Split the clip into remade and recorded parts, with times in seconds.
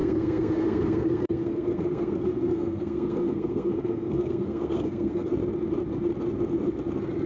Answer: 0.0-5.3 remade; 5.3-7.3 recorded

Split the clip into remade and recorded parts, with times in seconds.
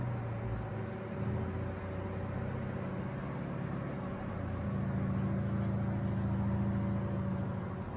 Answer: 0.0-8.0 recorded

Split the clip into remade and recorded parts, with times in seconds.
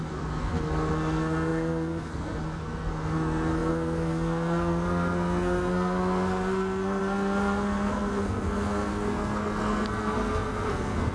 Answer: 0.0-11.1 remade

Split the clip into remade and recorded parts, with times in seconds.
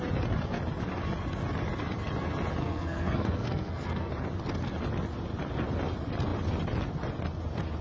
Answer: 0.0-2.6 recorded; 2.6-4.1 remade; 4.1-7.8 recorded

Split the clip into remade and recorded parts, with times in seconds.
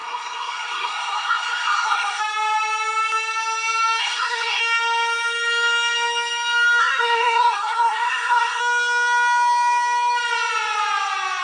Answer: 0.0-2.2 remade; 2.2-4.0 recorded; 4.0-4.6 remade; 4.6-6.8 recorded; 6.8-8.6 remade; 8.6-11.4 recorded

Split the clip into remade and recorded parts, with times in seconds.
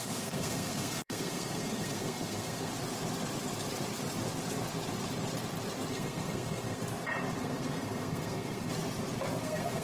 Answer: 0.0-2.7 remade; 2.7-5.9 recorded; 5.9-6.8 remade; 6.8-7.4 recorded; 7.4-8.7 remade; 8.7-9.4 recorded; 9.4-9.8 remade